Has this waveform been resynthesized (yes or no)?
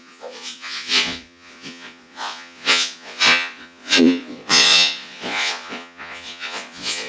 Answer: yes